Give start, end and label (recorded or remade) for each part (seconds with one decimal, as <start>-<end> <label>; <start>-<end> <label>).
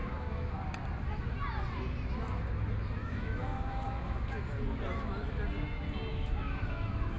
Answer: 0.0-0.5 remade; 0.5-3.0 recorded; 3.0-4.4 remade; 4.4-6.1 recorded; 6.1-7.2 remade